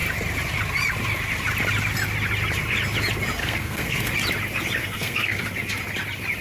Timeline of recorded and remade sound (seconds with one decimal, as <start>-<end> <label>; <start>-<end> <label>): 0.0-3.4 recorded; 3.4-4.1 remade; 4.1-4.8 recorded; 4.8-5.4 remade; 5.4-6.4 recorded